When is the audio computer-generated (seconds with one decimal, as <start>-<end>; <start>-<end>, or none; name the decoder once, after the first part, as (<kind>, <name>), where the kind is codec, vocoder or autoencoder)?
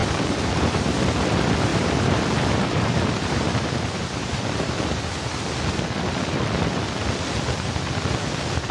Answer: 0.0-1.0 (vocoder, BigVGAN v2); 1.7-4.7